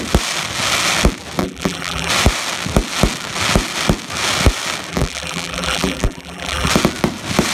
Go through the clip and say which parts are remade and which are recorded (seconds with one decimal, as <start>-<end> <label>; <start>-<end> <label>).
0.0-1.4 recorded; 1.4-2.1 remade; 2.1-4.9 recorded; 4.9-6.7 remade; 6.7-7.5 recorded

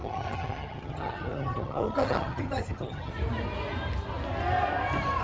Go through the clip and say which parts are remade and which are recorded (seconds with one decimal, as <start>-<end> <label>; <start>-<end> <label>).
0.0-3.1 remade; 3.1-5.2 recorded

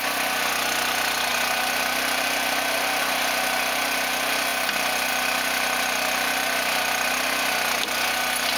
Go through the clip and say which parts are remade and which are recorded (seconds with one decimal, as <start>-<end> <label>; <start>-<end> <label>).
0.0-1.3 recorded; 1.3-3.0 remade; 3.0-8.6 recorded